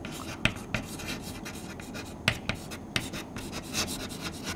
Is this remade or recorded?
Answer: recorded